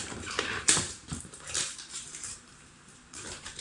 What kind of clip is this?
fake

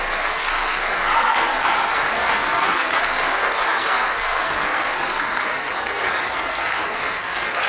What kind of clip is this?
fake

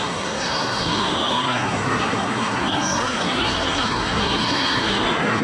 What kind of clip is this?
fake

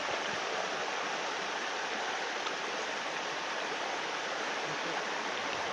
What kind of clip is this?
fake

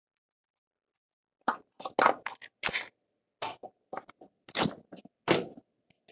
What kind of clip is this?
real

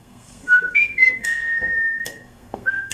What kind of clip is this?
fake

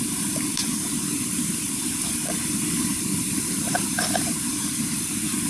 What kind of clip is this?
fake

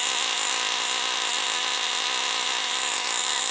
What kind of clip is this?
real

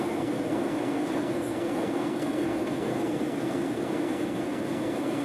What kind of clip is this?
fake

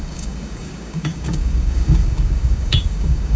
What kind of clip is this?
fake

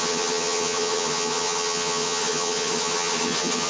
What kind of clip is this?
fake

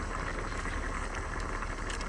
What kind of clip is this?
real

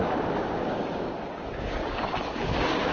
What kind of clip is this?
fake